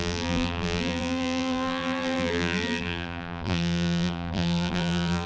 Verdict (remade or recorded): remade